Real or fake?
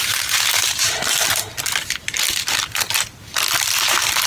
real